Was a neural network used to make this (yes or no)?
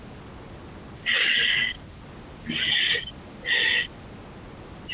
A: no